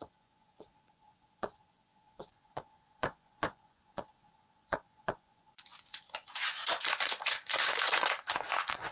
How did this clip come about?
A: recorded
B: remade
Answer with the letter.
B